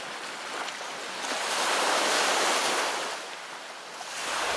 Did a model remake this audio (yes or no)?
no